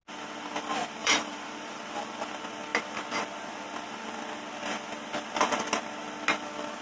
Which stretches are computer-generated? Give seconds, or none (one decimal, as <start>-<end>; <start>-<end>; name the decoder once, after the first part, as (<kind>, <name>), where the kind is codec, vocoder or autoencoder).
1.0-1.8 (vocoder, BigVGAN v2)

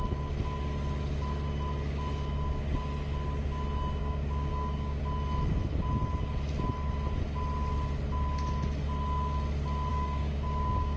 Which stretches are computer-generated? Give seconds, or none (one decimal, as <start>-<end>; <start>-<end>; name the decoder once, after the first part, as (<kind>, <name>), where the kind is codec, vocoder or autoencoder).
4.0-5.0 (codec, DAC); 9.9-11.0

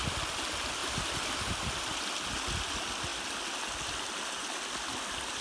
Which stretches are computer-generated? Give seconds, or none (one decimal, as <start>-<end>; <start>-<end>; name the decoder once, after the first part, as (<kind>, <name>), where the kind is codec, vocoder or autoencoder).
0.8-1.5 (vocoder, BigVGAN v2)

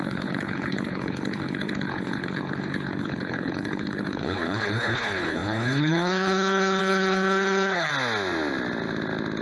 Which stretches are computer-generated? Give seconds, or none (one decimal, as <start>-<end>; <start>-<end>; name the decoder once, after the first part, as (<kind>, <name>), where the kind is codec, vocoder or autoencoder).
0.0-7.9 (codec, HILCodec)